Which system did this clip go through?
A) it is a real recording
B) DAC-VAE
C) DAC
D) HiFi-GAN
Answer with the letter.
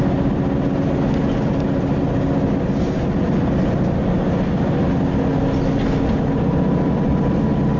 A